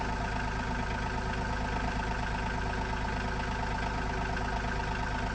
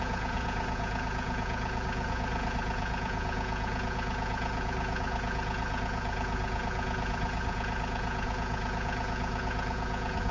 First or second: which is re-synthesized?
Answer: second